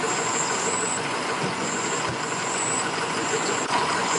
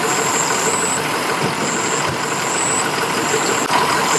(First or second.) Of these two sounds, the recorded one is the second